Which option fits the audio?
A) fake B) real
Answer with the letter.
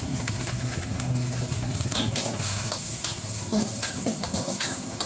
A